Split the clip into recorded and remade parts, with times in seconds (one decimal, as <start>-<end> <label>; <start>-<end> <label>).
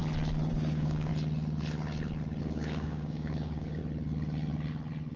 0.0-0.5 recorded; 0.5-1.1 remade; 1.1-2.4 recorded; 2.4-3.8 remade; 3.8-5.2 recorded